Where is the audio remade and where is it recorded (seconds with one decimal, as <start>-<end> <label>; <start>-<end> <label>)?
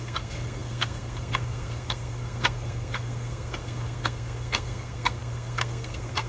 0.0-6.3 remade